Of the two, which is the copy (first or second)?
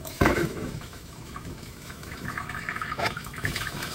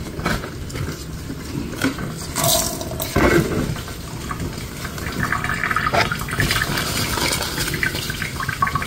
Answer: first